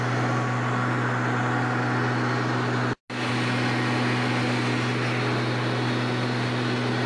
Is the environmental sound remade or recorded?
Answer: recorded